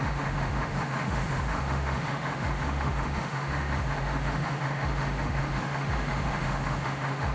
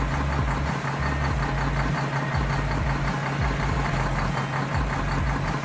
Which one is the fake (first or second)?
first